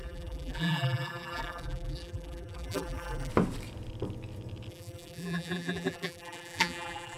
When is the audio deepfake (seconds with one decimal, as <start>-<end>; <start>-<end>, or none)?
0.0-3.3; 4.7-7.2